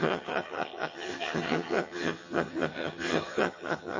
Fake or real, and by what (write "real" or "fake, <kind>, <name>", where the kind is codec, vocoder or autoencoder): fake, vocoder, HiFi-GAN